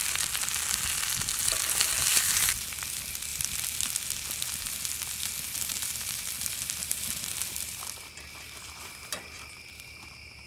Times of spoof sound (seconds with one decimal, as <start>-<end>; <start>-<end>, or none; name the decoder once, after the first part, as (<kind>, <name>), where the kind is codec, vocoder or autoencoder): 2.1-2.7 (vocoder, BigVGAN v2); 3.3-3.9; 5.7-9.6